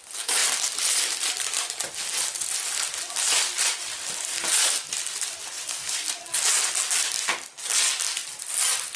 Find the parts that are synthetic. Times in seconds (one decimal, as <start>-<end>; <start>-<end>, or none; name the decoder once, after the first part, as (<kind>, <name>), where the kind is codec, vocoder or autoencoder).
none